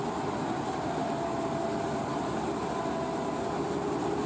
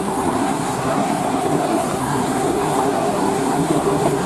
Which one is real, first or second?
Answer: first